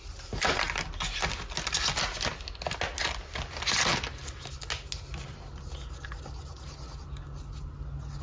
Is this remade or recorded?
recorded